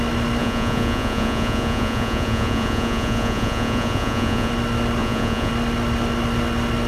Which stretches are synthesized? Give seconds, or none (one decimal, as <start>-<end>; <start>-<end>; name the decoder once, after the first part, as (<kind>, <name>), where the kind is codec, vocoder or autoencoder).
0.4-4.5 (vocoder, Vocos); 5.0-5.5